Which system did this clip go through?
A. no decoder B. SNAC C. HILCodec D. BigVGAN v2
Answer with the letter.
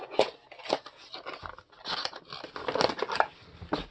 A